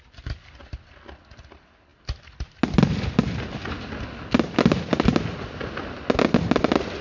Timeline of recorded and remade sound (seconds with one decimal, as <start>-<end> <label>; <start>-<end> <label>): 0.0-7.0 recorded